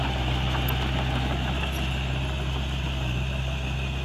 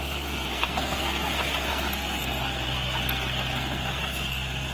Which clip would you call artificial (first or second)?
second